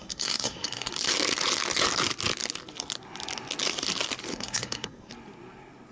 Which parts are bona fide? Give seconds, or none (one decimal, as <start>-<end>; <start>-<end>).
0.9-4.3; 5.1-5.9